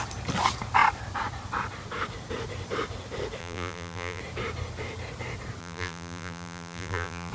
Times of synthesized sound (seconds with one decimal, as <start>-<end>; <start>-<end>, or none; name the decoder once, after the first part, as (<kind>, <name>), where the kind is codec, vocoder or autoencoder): 3.4-4.2 (vocoder, BigVGAN v2); 5.6-7.3